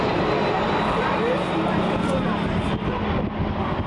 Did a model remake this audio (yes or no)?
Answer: yes